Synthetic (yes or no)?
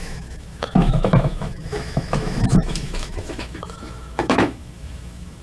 yes